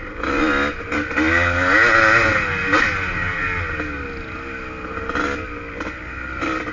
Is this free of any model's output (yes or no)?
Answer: yes